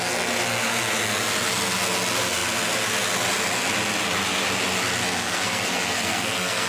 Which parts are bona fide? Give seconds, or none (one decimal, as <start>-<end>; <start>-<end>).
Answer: 0.0-5.1